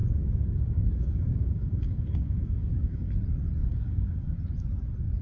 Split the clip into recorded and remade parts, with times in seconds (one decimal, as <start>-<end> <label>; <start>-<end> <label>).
0.0-3.1 remade; 3.1-3.6 recorded; 3.6-4.4 remade; 4.4-5.2 recorded